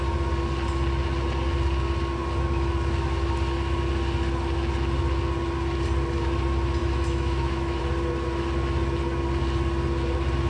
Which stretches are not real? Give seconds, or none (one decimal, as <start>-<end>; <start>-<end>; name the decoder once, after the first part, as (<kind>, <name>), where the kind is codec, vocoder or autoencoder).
6.8-7.8 (autoencoder, DAC-VAE)